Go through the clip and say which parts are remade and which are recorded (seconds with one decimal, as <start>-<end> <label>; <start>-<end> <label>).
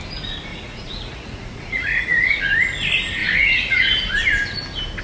0.0-0.5 recorded; 0.5-2.4 remade; 2.4-3.2 recorded; 3.2-4.1 remade; 4.1-5.0 recorded